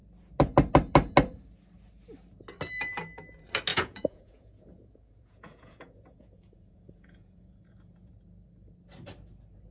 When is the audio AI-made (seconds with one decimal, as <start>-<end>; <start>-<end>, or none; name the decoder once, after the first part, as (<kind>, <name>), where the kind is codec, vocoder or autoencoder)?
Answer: 3.7-8.1 (vocoder, Vocos)